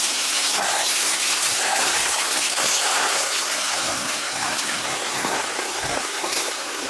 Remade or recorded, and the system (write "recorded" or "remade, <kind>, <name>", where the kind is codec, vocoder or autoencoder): remade, codec, SNAC